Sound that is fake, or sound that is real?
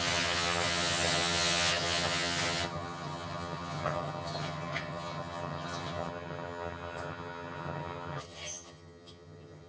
fake